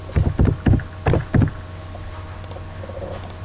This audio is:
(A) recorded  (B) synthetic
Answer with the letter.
A